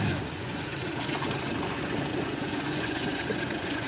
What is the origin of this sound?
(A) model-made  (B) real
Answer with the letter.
A